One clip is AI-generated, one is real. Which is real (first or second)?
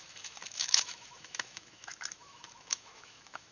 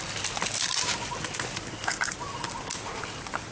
second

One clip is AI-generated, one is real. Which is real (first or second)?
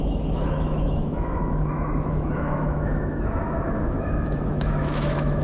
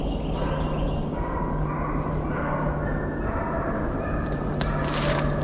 second